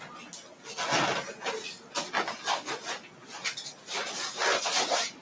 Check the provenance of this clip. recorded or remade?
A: recorded